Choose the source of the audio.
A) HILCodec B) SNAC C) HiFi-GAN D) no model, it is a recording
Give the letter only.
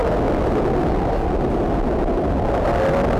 D